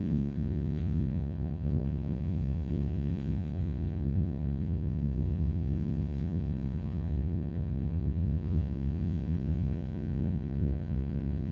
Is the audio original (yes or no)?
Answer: no